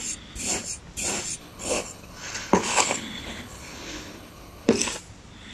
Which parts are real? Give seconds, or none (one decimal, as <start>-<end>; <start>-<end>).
0.0-1.4; 4.7-5.5